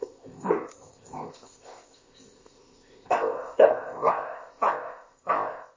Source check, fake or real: fake